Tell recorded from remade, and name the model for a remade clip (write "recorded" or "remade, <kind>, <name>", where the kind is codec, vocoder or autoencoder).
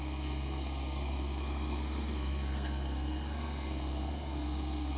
remade, codec, SNAC